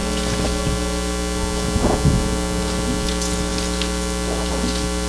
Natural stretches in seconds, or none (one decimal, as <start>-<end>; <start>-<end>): 0.0-5.1